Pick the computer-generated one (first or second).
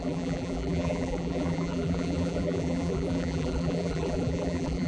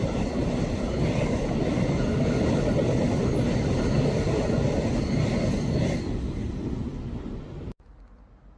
first